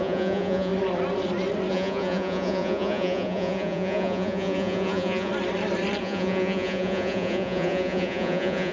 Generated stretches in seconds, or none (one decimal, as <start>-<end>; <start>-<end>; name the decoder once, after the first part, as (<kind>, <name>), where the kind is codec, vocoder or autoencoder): 0.0-0.7 (vocoder, Vocos); 1.7-5.3; 6.0-8.7